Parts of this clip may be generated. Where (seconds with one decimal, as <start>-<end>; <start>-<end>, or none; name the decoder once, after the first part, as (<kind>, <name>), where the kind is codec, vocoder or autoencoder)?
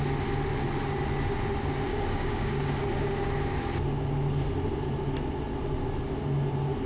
1.9-2.8 (codec, DAC)